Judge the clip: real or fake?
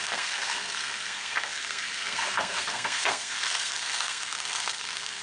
fake